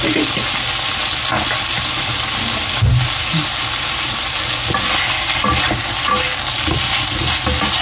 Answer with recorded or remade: recorded